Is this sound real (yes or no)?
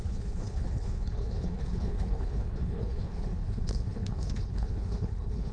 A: no